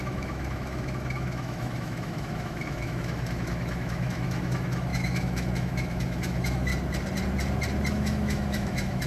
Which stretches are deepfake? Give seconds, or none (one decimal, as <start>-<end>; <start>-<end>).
0.0-6.7; 7.9-9.1